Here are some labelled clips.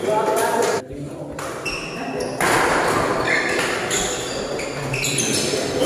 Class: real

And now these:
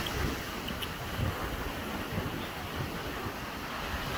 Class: real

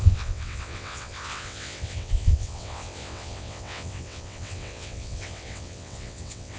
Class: fake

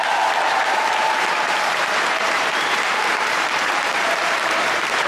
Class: fake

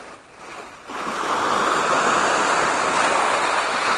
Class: real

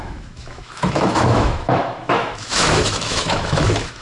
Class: fake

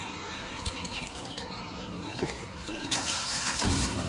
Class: fake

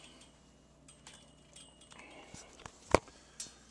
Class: real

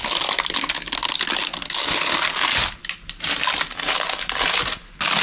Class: real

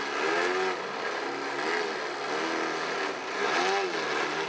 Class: real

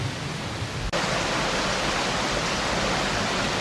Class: real